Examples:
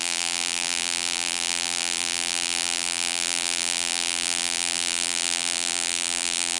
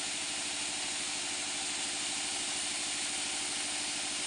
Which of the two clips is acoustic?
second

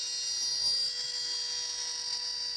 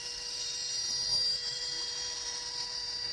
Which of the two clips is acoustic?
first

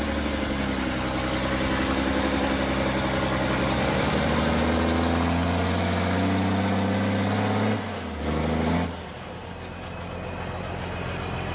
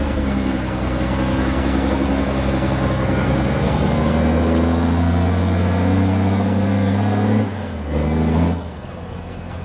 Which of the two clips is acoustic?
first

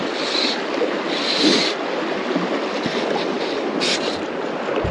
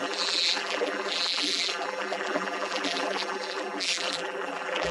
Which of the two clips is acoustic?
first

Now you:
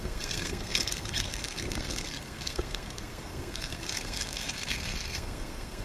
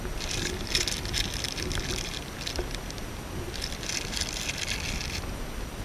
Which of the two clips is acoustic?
second